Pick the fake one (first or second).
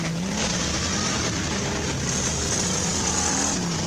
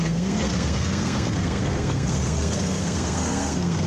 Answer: second